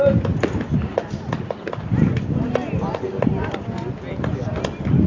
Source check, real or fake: real